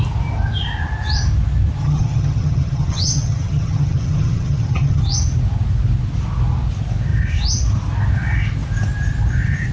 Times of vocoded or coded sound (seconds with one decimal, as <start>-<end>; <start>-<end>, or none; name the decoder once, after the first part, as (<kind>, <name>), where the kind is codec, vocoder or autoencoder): 1.8-5.0 (vocoder, HiFi-GAN)